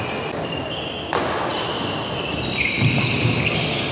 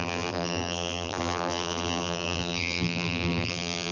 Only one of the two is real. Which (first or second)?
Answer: first